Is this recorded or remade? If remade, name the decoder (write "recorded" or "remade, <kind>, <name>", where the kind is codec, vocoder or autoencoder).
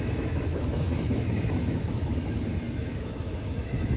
remade, autoencoder, DAC-VAE